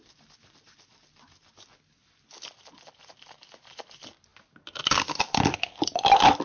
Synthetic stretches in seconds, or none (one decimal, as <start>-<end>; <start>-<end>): none